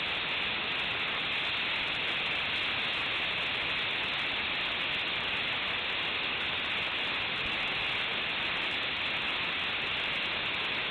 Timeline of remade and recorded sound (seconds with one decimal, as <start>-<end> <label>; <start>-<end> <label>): 0.0-10.9 recorded